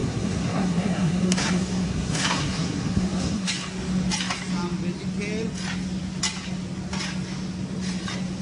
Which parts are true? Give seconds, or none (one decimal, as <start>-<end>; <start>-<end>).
3.5-8.4